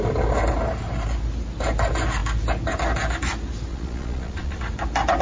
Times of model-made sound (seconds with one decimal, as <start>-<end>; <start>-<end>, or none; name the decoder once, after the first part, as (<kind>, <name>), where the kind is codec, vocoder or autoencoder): 3.7-4.6 (vocoder, Vocos)